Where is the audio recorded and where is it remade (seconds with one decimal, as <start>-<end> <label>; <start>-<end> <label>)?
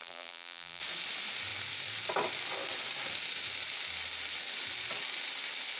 0.0-0.8 remade; 0.8-5.8 recorded